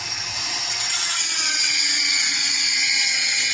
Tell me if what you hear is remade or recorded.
remade